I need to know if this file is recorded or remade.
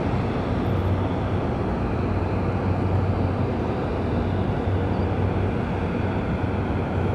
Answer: recorded